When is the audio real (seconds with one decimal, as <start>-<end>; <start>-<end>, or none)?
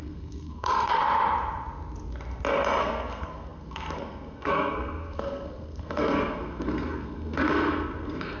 1.0-2.8